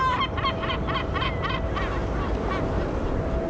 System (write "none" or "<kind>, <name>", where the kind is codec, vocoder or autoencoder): none